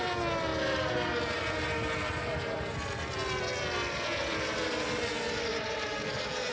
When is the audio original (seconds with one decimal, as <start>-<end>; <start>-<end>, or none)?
0.0-6.5